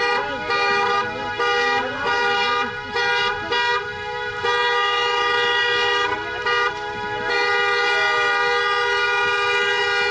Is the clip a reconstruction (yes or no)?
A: no